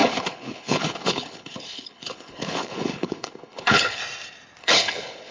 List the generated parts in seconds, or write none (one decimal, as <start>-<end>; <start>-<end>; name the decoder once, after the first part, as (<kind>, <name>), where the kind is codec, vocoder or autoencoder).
0.0-4.0 (codec, HILCodec); 4.6-5.3